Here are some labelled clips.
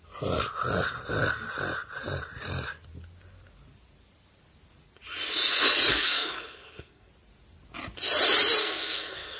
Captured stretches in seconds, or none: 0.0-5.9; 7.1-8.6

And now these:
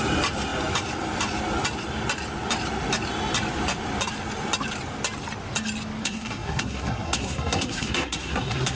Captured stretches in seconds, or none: 0.0-6.0

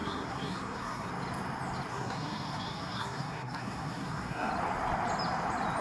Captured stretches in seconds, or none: 1.1-1.9; 4.5-5.8

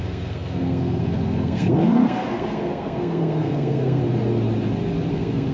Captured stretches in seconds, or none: 4.0-5.1

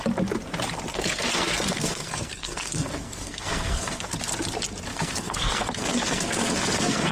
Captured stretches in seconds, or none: 0.0-0.9; 4.1-4.9